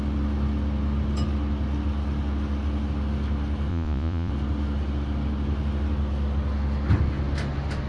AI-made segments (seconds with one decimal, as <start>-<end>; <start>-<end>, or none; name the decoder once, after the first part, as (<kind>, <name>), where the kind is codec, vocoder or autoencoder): 3.7-4.3 (vocoder, Vocos)